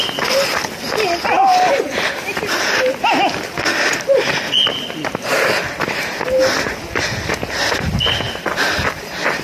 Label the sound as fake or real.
real